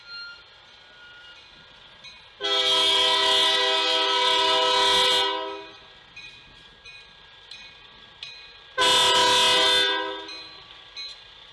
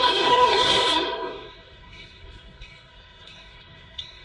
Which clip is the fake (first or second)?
second